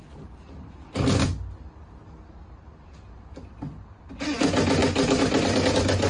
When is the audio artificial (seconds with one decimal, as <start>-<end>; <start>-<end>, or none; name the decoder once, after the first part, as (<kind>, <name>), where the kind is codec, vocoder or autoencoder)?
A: none